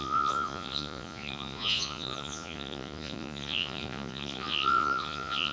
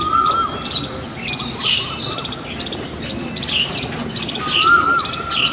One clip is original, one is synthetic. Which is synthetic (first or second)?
first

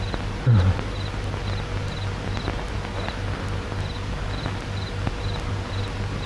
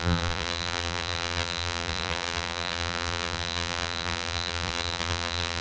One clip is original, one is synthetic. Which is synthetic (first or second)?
second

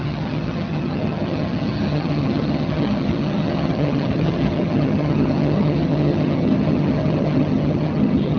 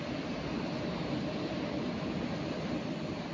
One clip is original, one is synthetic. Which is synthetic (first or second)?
first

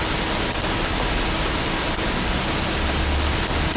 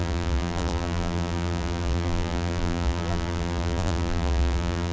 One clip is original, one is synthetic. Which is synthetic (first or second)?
second